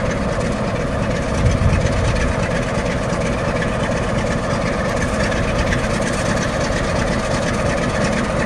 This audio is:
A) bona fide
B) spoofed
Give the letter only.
A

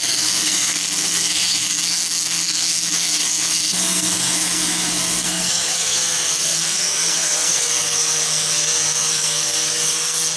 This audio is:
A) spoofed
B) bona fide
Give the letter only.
A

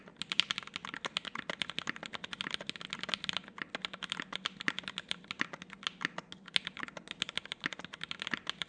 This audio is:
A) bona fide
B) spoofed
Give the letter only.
A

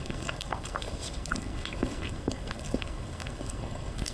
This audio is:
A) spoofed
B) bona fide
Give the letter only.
A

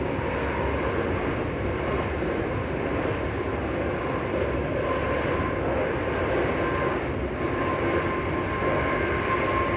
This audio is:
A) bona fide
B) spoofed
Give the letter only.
A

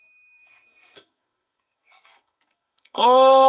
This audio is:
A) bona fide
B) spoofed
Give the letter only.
B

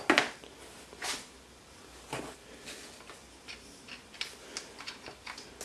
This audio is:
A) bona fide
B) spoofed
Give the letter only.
A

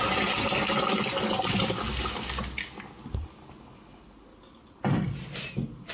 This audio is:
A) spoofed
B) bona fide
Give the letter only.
B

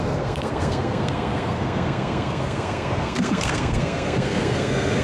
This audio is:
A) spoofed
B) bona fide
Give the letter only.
A